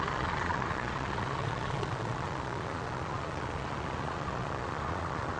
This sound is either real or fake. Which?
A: fake